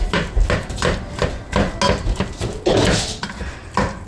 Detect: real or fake real